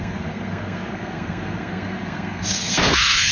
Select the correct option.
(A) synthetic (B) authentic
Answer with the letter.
A